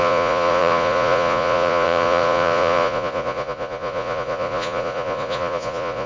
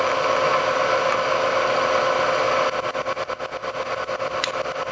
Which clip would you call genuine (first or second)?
second